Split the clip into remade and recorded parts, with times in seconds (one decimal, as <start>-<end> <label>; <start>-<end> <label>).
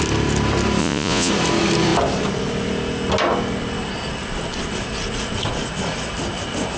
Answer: 0.0-0.8 recorded; 0.8-1.3 remade; 1.3-6.8 recorded